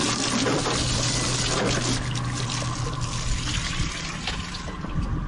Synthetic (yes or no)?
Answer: no